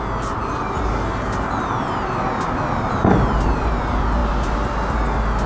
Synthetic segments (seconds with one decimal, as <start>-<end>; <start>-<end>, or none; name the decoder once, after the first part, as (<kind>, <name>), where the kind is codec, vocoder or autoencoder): none